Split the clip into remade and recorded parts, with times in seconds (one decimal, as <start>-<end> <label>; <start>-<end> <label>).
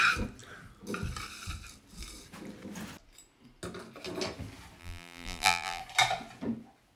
0.0-4.8 recorded; 4.8-5.8 remade; 5.8-7.0 recorded